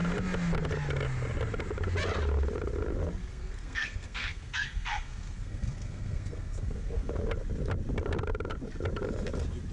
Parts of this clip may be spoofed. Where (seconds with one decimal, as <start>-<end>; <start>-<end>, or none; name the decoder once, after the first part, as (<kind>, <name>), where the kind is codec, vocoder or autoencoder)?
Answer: 3.3-7.1 (codec, SNAC)